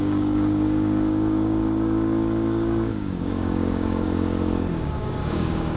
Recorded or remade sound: remade